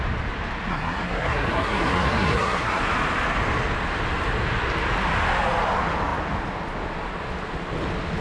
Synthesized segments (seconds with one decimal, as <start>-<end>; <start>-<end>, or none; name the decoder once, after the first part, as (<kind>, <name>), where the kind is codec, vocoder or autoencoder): 0.7-2.8 (codec, SNAC)